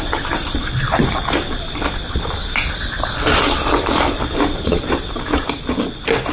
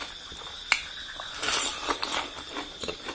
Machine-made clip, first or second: first